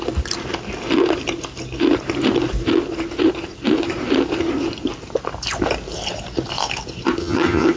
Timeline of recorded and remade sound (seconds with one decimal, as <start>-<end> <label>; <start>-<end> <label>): 0.0-7.2 recorded; 7.2-7.8 remade